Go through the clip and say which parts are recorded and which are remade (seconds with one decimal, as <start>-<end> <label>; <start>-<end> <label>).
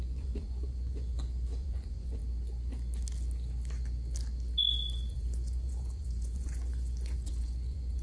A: 0.0-2.2 remade; 2.2-5.1 recorded; 5.1-8.0 remade